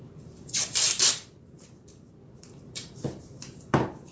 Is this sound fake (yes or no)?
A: yes